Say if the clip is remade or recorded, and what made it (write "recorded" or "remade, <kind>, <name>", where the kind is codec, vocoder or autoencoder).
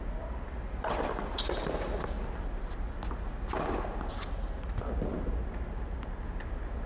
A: recorded